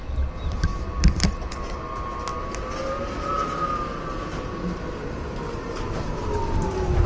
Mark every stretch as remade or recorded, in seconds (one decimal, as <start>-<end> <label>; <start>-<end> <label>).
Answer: 0.0-7.1 recorded